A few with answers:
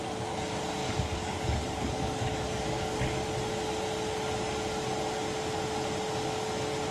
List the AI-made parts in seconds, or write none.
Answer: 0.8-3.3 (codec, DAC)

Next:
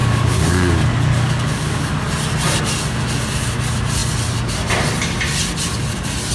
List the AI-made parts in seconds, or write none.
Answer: 0.0-1.9 (codec, DAC)

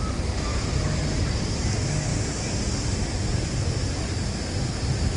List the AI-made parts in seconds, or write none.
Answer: 0.5-1.3 (vocoder, BigVGAN v2)

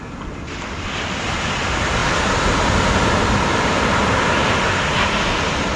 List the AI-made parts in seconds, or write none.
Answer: none

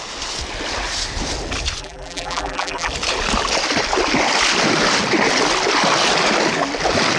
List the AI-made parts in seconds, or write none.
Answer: 1.8-2.9 (vocoder, BigVGAN v2)

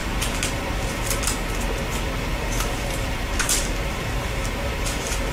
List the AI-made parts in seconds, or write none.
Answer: 2.3-5.3 (vocoder, BigVGAN v2)